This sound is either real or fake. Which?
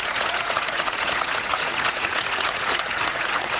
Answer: fake